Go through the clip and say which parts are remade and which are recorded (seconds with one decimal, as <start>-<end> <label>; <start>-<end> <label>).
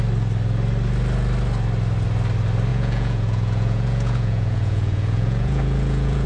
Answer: 0.0-2.7 recorded; 2.7-6.3 remade